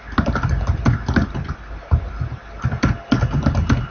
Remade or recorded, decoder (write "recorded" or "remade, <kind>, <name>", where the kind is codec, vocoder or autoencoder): recorded